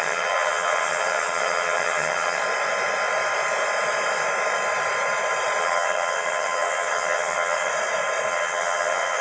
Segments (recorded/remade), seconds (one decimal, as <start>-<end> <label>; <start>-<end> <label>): 0.0-2.4 remade; 2.4-5.6 recorded; 5.6-7.7 remade; 7.7-8.3 recorded; 8.3-9.2 remade